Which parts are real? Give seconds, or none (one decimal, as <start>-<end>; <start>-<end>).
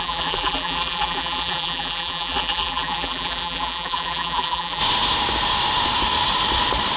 4.8-7.0